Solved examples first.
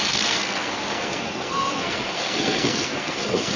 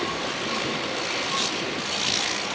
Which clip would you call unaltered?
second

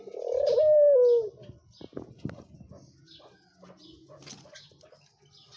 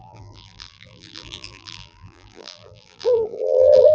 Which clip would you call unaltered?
first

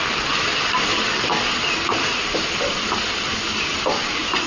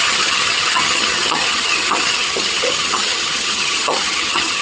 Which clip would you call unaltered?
first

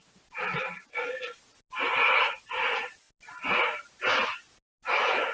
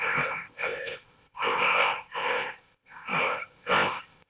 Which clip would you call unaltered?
first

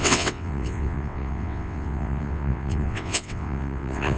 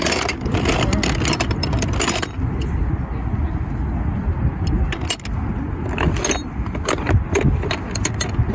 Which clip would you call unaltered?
second